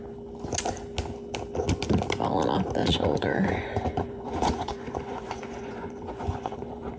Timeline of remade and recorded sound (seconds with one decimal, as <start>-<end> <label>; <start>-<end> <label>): 0.0-2.8 recorded; 2.8-7.0 remade